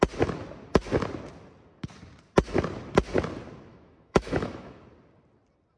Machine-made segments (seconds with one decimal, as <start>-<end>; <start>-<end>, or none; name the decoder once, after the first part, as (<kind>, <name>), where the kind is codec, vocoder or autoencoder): 3.7-4.8 (autoencoder, DAC-VAE)